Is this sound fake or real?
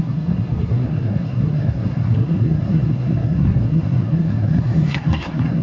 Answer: fake